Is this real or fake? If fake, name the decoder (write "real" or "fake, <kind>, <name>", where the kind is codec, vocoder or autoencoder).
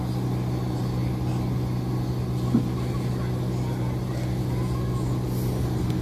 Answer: real